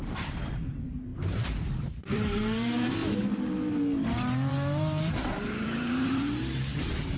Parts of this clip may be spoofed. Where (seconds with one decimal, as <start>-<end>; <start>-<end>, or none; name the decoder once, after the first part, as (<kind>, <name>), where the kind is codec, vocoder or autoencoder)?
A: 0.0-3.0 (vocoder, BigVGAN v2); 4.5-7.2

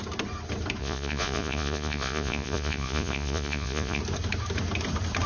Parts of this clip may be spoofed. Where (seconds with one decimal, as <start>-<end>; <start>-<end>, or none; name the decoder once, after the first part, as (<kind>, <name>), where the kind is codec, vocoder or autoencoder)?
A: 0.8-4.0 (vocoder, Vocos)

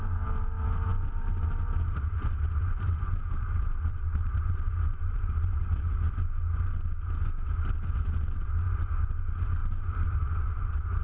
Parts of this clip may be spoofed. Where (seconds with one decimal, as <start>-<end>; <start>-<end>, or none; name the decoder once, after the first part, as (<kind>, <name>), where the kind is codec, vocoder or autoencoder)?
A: 0.9-5.6 (vocoder, BigVGAN v2); 9.6-11.0

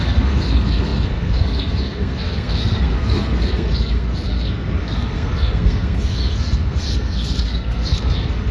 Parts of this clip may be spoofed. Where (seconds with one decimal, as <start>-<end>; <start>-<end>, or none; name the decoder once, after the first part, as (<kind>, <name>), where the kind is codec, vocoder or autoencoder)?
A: 0.0-8.5 (codec, SNAC)